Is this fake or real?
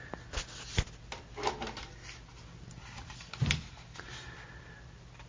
real